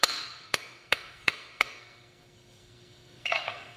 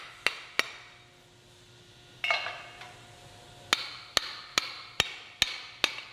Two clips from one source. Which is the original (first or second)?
second